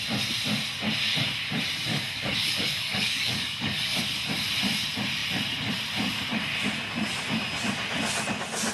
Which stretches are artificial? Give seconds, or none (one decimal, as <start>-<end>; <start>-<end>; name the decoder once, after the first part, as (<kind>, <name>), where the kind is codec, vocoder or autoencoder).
1.9-4.0 (codec, DAC)